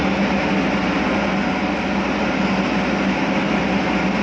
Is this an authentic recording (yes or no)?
yes